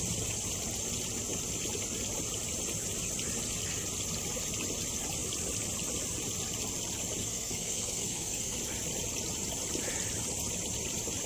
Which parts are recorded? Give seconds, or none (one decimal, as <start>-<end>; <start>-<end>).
0.0-7.2; 8.6-11.3